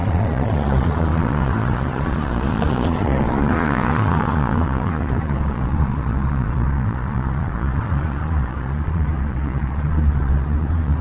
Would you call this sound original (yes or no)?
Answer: no